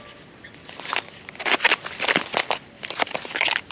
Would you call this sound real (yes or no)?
yes